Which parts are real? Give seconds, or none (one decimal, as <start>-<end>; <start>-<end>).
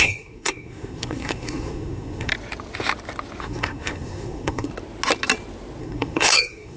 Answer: 2.3-3.4; 4.7-5.8